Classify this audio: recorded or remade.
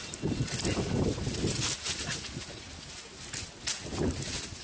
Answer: recorded